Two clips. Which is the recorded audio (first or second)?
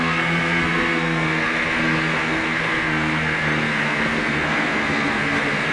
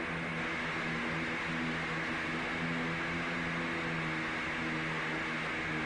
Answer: second